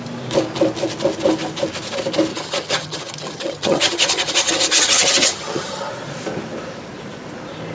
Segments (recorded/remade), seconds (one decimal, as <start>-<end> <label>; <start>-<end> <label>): 0.0-2.3 recorded; 2.3-5.9 remade; 5.9-7.7 recorded